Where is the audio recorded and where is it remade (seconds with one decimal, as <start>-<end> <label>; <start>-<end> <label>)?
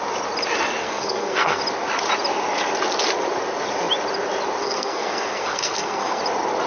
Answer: 0.0-0.8 recorded; 0.8-1.6 remade; 1.6-4.6 recorded; 4.6-6.2 remade; 6.2-6.7 recorded